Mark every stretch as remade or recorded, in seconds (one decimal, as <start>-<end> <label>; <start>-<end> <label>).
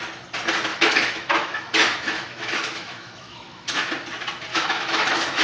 0.0-0.7 recorded; 0.7-3.9 remade; 3.9-4.5 recorded; 4.5-5.4 remade